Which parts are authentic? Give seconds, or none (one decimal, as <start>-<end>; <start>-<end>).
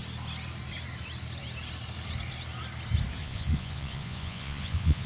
0.0-3.2